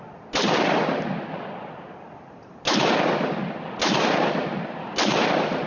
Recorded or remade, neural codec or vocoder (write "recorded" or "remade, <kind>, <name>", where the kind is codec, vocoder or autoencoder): recorded